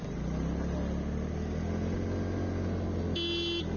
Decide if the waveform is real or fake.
real